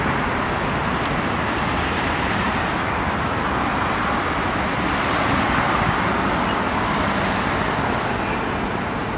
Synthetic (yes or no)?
no